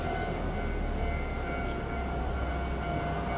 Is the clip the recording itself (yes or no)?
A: yes